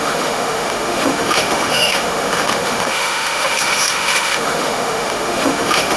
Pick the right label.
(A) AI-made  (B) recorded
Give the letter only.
A